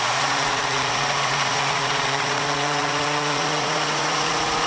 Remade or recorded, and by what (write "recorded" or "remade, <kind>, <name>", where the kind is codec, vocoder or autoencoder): remade, vocoder, Vocos